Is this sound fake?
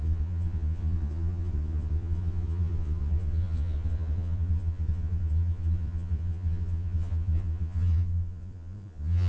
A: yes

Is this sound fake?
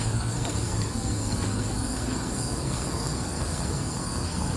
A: yes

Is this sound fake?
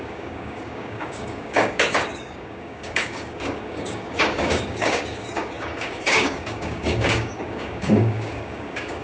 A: yes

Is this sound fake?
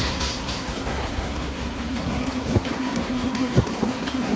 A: yes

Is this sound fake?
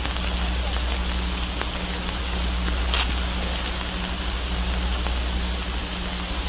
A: no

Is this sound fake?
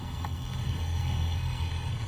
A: yes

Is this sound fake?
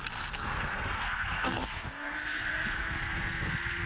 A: yes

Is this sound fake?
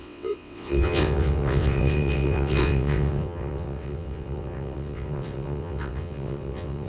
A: yes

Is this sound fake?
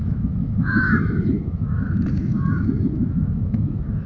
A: yes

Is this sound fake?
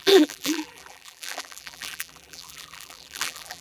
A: yes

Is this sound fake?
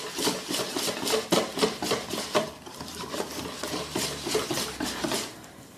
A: no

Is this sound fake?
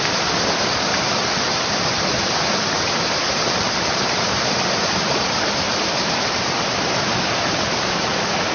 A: yes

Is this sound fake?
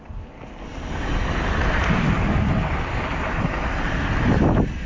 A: no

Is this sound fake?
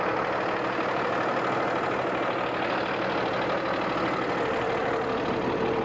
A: no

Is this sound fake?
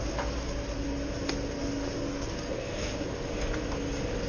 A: no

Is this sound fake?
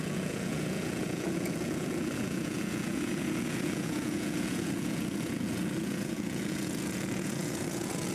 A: yes